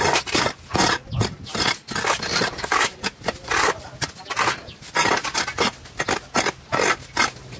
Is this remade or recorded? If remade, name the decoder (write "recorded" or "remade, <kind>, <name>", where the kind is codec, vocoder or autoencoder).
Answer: recorded